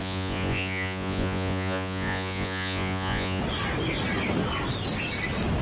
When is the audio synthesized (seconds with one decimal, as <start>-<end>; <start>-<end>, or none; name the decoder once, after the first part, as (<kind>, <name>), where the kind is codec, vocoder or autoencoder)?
0.0-3.4 (vocoder, Vocos)